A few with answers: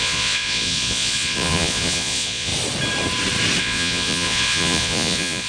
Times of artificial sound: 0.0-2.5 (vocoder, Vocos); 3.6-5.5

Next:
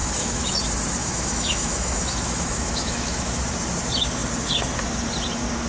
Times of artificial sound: 0.0-0.6 (autoencoder, DAC-VAE); 1.0-3.4

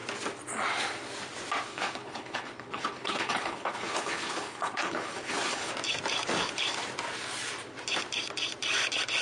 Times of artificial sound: 1.7-5.7 (codec, HILCodec)

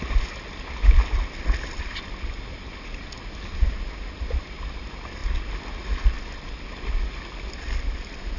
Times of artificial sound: none

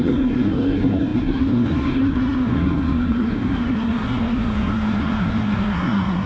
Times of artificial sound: 0.0-6.3 (codec, SNAC)